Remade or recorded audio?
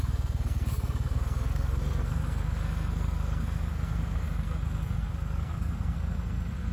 remade